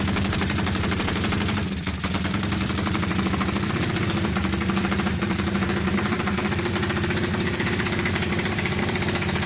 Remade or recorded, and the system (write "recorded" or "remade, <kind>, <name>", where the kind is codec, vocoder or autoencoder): remade, vocoder, BigVGAN v2